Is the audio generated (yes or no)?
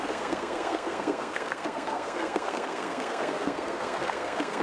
yes